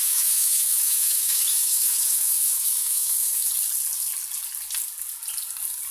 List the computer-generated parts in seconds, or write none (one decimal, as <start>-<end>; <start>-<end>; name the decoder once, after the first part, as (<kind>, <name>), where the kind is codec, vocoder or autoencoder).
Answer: 0.0-3.5 (autoencoder, DAC-VAE)